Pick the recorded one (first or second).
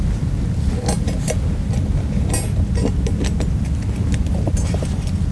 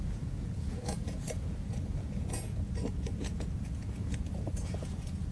first